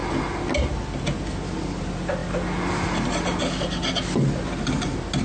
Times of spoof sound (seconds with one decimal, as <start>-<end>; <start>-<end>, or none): none